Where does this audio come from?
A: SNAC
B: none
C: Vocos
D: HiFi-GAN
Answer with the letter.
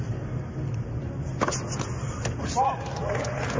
B